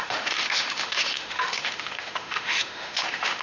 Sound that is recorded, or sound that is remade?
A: remade